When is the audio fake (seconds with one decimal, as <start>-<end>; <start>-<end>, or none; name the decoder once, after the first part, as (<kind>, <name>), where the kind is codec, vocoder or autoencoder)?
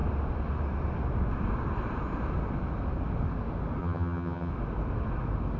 3.8-4.5 (vocoder, HiFi-GAN)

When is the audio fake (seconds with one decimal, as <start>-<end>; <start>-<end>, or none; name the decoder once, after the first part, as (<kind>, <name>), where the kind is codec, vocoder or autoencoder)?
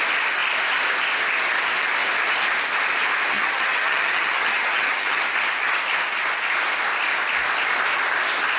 3.3-5.2 (vocoder, HiFi-GAN)